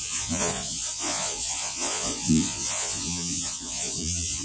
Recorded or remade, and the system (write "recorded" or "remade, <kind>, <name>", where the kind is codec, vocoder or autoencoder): remade, vocoder, Vocos